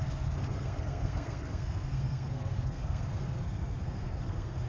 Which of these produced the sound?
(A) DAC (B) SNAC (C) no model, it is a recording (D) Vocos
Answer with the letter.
B